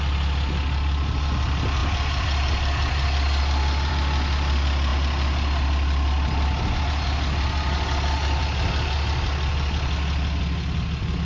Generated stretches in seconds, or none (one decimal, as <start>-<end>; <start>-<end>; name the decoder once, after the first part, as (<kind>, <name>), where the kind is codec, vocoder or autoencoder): none